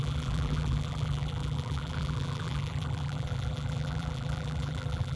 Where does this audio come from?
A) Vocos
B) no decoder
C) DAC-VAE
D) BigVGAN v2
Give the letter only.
D